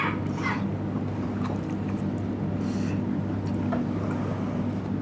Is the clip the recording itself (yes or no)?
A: yes